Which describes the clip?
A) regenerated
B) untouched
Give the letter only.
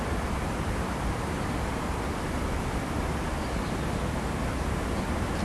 B